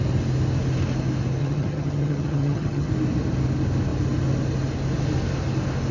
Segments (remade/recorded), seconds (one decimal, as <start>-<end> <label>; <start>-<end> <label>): 0.0-1.4 recorded; 1.4-2.9 remade; 2.9-5.9 recorded